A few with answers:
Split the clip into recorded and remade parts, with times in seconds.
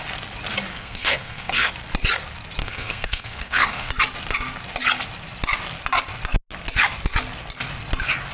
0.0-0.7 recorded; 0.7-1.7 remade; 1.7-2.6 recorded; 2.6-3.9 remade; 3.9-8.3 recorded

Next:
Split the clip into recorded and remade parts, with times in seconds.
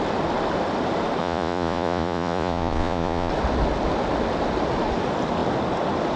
0.0-1.2 recorded; 1.2-3.3 remade; 3.3-6.2 recorded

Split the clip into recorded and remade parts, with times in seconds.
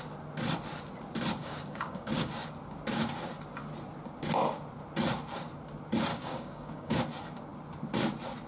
0.0-1.4 recorded; 1.4-2.3 remade; 2.3-6.1 recorded; 6.1-7.0 remade; 7.0-8.5 recorded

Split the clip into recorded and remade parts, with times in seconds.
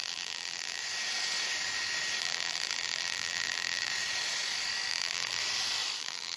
0.0-0.8 remade; 0.8-2.2 recorded; 2.2-3.9 remade; 3.9-4.9 recorded; 4.9-5.4 remade; 5.4-6.0 recorded; 6.0-6.4 remade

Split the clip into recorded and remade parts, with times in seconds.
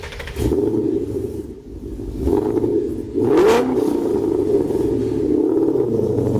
0.0-2.9 remade; 2.9-3.6 recorded; 3.6-4.1 remade; 4.1-5.0 recorded; 5.0-5.5 remade; 5.5-6.4 recorded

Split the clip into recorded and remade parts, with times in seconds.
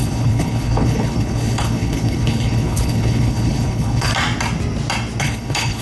0.0-4.1 remade; 4.1-5.2 recorded; 5.2-5.8 remade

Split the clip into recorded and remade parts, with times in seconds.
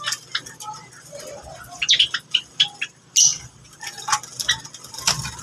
0.0-5.4 recorded